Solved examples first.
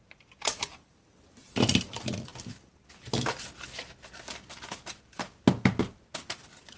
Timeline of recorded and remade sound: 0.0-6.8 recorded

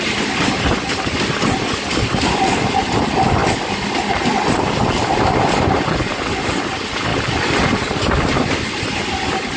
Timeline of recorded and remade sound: 0.0-9.6 recorded

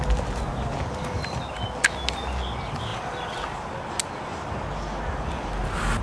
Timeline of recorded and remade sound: 0.0-6.0 recorded